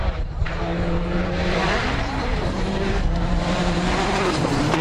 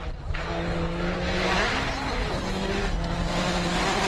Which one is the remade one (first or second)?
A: first